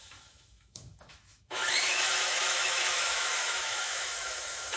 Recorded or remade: remade